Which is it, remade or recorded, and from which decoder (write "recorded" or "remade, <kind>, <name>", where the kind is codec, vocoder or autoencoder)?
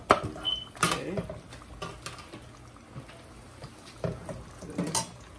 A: recorded